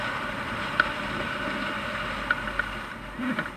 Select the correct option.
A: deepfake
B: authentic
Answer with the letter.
B